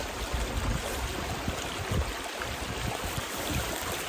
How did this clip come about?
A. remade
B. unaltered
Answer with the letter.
B